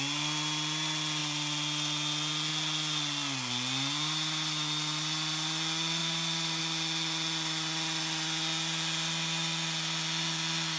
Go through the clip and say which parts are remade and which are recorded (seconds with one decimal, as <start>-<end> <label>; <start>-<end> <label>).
0.0-6.0 recorded; 6.0-6.6 remade; 6.6-10.8 recorded